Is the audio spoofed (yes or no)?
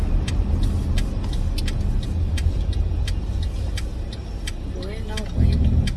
no